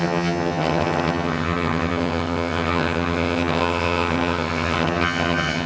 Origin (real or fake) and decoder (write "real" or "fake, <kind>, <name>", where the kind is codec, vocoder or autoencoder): fake, vocoder, HiFi-GAN